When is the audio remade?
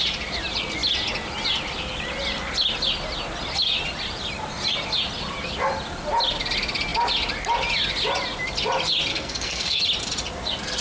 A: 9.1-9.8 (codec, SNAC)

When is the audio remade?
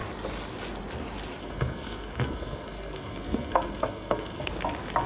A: 1.4-4.5 (codec, SNAC)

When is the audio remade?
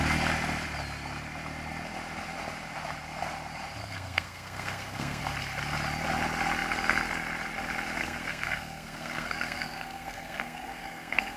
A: 3.8-5.2 (codec, SNAC); 8.0-11.4